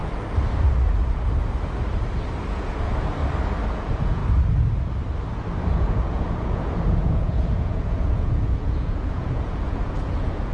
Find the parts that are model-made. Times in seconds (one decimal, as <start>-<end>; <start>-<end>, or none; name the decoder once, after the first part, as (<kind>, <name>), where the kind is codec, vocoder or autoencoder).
2.5-3.2 (vocoder, Vocos); 3.7-4.2; 5.6-10.5